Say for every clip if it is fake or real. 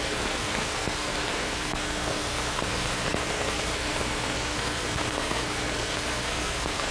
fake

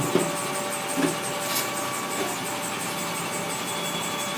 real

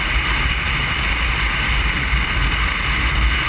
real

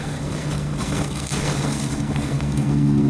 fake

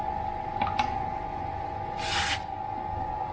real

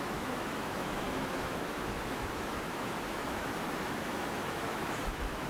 fake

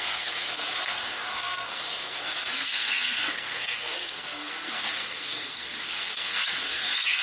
fake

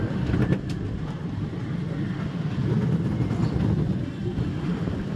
fake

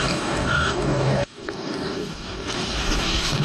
fake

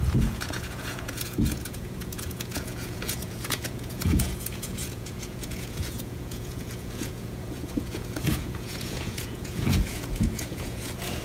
fake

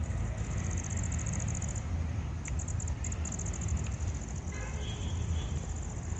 real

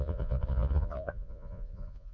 fake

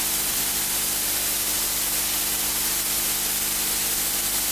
real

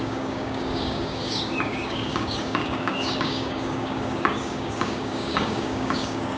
fake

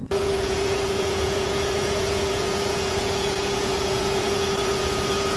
fake